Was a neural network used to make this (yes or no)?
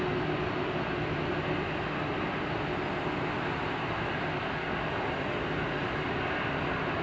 no